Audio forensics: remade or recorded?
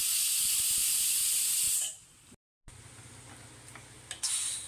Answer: recorded